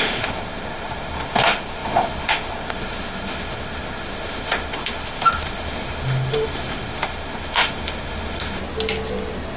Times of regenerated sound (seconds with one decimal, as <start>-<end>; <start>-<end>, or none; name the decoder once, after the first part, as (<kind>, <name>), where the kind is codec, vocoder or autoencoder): 0.0-8.6 (autoencoder, DAC-VAE)

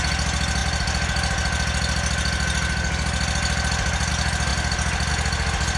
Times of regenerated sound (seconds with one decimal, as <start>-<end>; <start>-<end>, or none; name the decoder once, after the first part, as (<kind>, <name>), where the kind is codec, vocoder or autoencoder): none

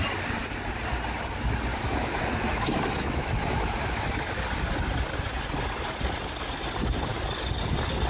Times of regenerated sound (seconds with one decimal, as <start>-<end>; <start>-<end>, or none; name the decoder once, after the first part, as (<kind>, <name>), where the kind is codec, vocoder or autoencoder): 1.7-4.1 (autoencoder, DAC-VAE)